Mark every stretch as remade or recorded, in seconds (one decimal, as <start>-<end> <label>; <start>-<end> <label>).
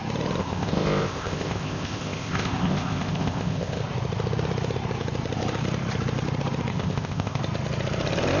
0.0-0.4 recorded; 0.4-3.8 remade; 3.8-6.7 recorded; 6.7-7.4 remade; 7.4-8.4 recorded